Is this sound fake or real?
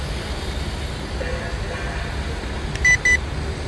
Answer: real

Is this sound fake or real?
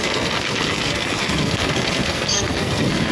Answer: fake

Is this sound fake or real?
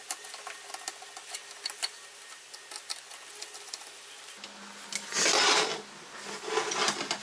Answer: real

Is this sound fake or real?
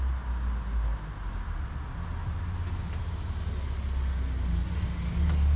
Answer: real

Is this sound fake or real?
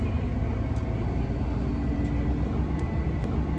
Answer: real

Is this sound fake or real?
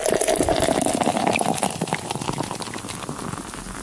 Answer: real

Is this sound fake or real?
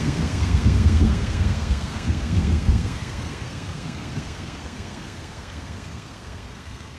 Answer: fake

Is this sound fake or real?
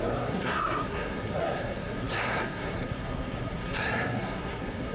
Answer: fake